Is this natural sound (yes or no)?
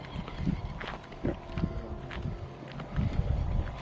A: yes